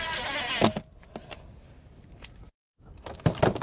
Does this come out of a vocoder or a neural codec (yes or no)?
no